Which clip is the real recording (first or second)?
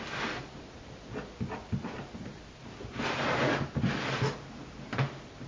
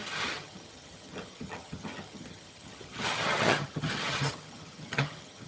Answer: first